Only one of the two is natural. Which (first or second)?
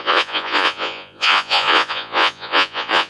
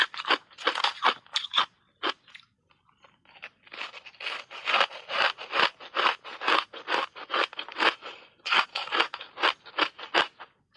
second